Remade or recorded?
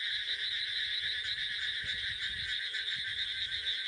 recorded